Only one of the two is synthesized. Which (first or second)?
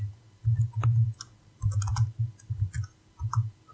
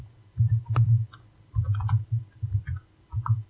second